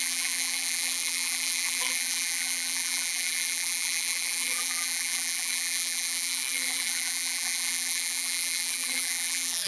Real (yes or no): no